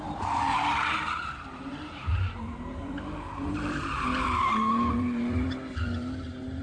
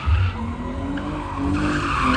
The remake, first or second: first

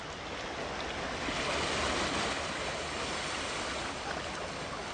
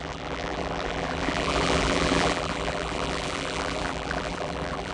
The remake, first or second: second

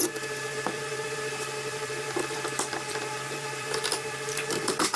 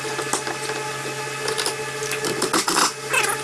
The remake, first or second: first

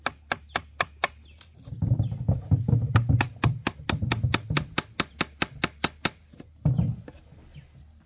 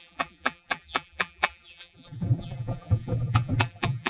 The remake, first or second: second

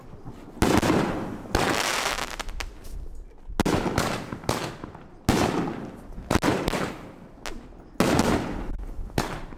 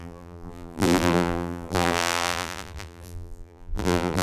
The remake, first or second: second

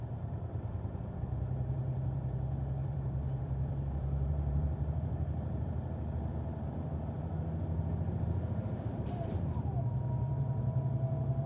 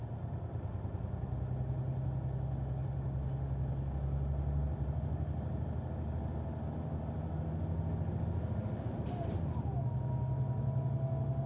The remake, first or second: first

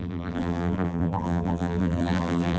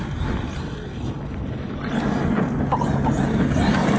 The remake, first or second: first